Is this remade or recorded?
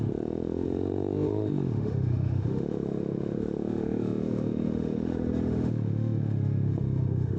remade